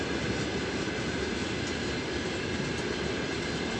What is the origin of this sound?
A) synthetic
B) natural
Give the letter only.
B